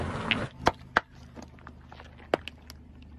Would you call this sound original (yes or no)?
yes